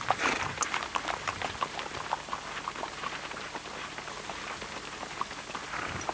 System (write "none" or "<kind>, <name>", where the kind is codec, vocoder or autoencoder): none